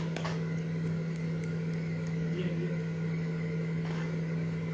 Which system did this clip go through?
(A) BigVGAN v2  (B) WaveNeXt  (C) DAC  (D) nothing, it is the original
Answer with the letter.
C